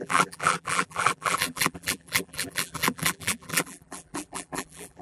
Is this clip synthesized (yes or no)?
yes